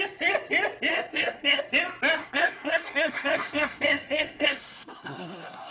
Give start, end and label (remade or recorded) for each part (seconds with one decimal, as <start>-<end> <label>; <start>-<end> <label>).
0.0-0.9 recorded; 0.9-1.6 remade; 1.6-2.2 recorded; 2.2-5.7 remade